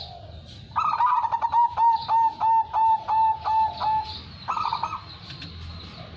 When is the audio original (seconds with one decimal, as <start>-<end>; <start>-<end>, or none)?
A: 0.0-6.2